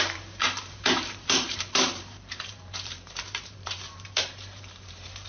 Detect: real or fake fake